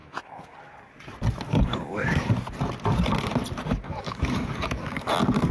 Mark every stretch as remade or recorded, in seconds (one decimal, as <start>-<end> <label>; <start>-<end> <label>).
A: 0.0-0.6 remade; 0.6-1.5 recorded; 1.5-2.3 remade; 2.3-3.7 recorded; 3.7-5.1 remade; 5.1-5.5 recorded